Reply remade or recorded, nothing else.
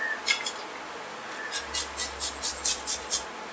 recorded